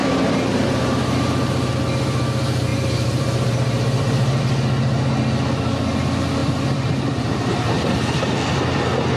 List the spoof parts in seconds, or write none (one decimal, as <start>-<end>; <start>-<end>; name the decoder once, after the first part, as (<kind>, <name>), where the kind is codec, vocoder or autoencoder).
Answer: 0.0-1.7 (vocoder, BigVGAN v2); 2.7-4.4; 6.4-7.7